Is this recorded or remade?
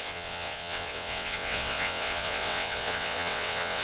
remade